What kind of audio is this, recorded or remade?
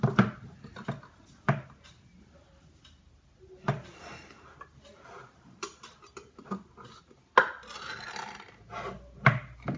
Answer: recorded